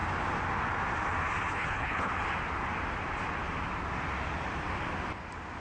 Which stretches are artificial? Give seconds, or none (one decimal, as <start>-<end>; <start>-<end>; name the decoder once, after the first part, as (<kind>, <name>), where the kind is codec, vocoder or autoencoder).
1.5-2.1 (codec, HILCodec)